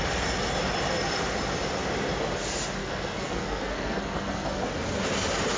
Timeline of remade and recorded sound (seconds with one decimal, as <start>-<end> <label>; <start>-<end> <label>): 0.0-2.8 recorded; 2.8-4.6 remade; 4.6-5.6 recorded

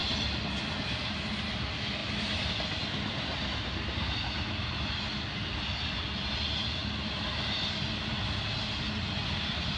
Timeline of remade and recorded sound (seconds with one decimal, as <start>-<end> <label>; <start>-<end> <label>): 0.0-2.0 recorded; 2.0-2.5 remade; 2.5-9.8 recorded

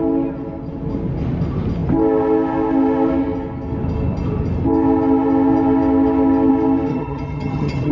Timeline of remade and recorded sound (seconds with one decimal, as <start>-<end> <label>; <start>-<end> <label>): 0.0-6.9 recorded; 6.9-7.9 remade

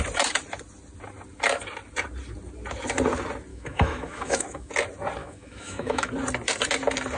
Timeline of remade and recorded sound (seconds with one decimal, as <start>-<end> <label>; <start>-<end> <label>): 0.0-3.5 recorded; 3.5-4.7 remade; 4.7-5.2 recorded; 5.2-6.1 remade; 6.1-7.2 recorded